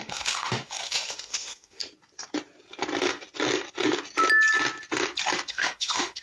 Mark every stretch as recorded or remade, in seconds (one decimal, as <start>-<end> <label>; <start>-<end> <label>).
0.0-1.8 remade; 1.8-5.5 recorded; 5.5-6.2 remade